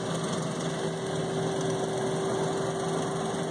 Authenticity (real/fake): real